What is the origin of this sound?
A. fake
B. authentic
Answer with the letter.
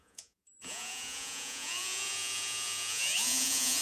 A